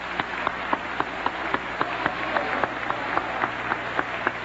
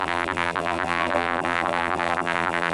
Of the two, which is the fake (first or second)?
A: second